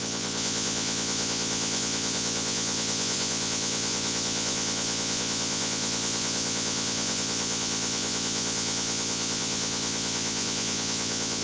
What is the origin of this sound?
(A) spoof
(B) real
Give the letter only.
A